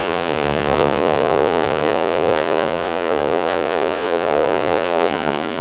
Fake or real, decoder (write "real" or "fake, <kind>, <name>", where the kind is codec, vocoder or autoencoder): fake, vocoder, Vocos